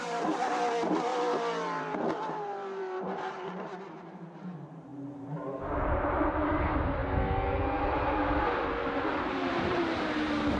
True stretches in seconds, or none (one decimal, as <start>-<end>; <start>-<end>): 7.0-9.3